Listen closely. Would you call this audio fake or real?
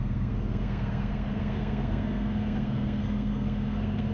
fake